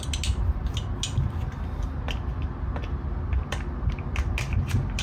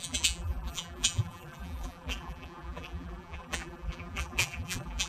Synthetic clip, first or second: second